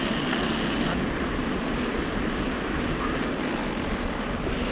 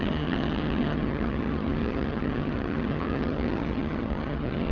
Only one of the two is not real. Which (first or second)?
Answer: second